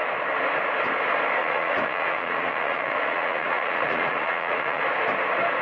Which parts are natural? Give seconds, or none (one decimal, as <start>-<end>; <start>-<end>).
0.0-1.4; 4.8-5.6